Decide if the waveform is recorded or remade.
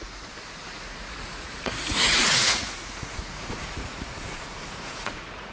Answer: remade